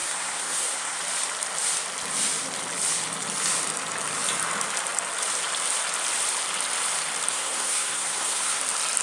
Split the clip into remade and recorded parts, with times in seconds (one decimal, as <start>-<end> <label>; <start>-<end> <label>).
0.0-1.0 remade; 1.0-7.3 recorded; 7.3-8.6 remade; 8.6-9.0 recorded